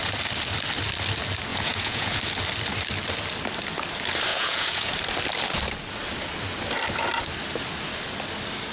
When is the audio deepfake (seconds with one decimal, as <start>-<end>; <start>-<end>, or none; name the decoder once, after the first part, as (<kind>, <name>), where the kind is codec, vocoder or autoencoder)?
1.5-2.2 (vocoder, Vocos); 4.3-4.9